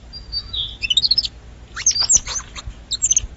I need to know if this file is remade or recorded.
recorded